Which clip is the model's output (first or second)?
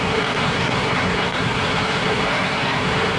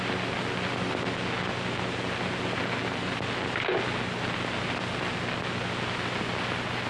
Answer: first